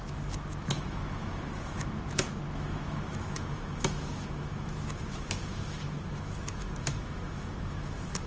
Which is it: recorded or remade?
remade